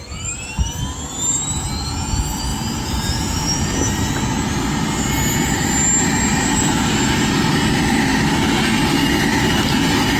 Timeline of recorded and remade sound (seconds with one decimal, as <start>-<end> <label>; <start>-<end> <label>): 0.0-2.5 recorded; 2.5-4.2 remade; 4.2-6.3 recorded; 6.3-6.9 remade; 6.9-10.2 recorded